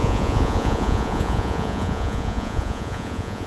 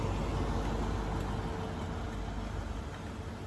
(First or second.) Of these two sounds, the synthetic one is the first